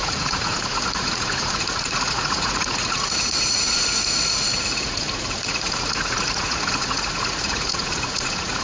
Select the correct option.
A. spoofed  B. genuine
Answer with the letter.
A